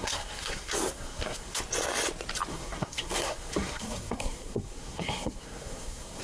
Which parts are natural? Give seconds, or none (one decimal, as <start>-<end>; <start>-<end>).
1.6-2.5